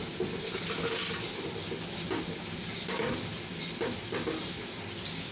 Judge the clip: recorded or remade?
recorded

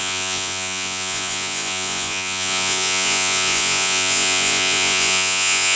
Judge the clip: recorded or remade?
remade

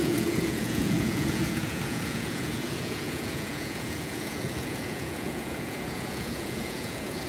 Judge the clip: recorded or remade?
remade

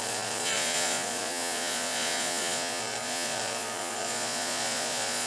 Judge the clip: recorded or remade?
remade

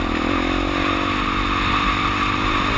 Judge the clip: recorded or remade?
recorded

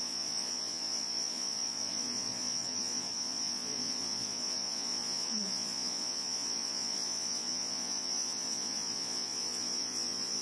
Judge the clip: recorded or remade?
remade